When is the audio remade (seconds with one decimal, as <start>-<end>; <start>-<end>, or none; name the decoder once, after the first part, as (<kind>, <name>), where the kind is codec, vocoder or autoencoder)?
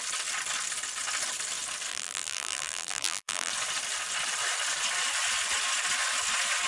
1.9-3.5 (vocoder, BigVGAN v2)